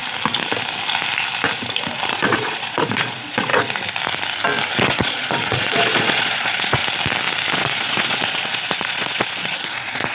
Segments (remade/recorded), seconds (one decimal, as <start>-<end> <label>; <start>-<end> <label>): 0.0-2.1 recorded; 2.1-3.5 remade; 3.5-4.8 recorded; 4.8-6.8 remade; 6.8-7.5 recorded; 7.5-10.1 remade

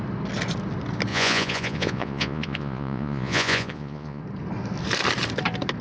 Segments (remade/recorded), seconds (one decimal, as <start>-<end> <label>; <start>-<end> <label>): 0.0-1.1 recorded; 1.1-4.2 remade; 4.2-5.8 recorded

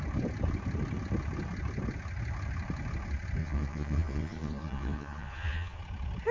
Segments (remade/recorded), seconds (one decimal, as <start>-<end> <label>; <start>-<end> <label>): 0.0-3.4 recorded; 3.4-5.8 remade; 5.8-6.3 recorded

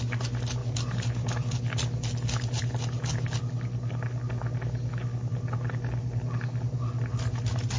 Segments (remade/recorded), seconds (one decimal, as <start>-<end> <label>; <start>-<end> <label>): 0.0-7.8 recorded

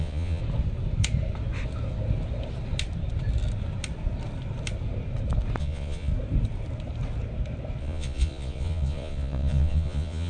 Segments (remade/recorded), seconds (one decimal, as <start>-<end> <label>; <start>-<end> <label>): 0.0-0.4 remade; 0.4-5.6 recorded; 5.6-6.1 remade; 6.1-7.8 recorded; 7.8-10.3 remade